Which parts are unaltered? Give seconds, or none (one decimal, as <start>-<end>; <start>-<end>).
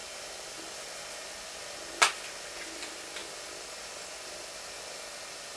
0.0-5.6